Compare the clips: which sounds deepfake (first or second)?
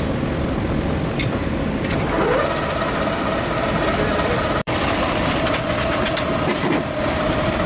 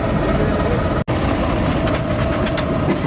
first